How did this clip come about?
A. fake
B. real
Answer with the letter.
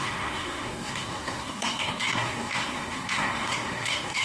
A